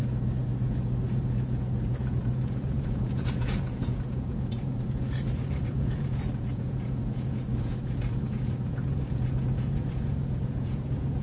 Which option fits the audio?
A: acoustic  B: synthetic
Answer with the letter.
B